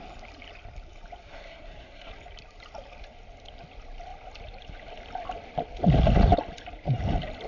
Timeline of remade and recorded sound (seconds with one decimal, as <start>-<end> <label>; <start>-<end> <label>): 0.0-1.2 recorded; 1.2-2.1 remade; 2.1-7.5 recorded